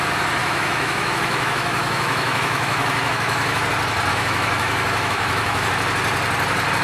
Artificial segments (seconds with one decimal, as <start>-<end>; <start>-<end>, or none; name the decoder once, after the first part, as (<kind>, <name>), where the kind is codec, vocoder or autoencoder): 0.4-3.6 (autoencoder, DAC-VAE); 4.1-5.7